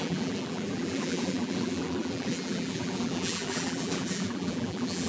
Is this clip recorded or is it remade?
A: remade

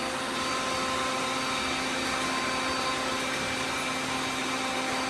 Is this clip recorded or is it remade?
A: recorded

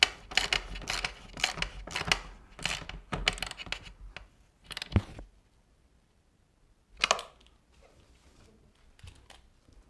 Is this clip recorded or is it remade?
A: recorded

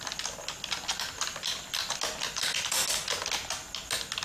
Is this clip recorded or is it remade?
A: recorded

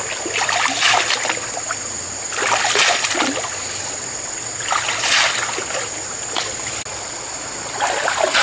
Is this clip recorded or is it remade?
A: recorded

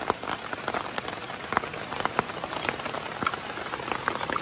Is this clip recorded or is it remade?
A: recorded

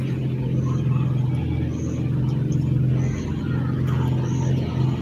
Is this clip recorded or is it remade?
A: recorded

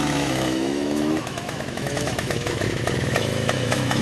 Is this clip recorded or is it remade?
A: remade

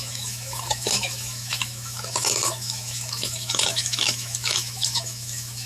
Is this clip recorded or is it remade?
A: remade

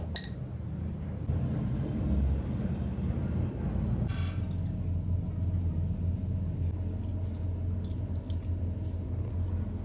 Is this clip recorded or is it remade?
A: recorded